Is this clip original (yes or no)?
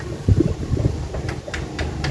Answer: no